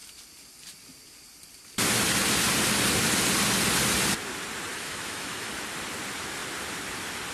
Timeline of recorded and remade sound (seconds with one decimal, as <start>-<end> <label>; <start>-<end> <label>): 0.0-4.7 recorded; 4.7-5.5 remade; 5.5-7.3 recorded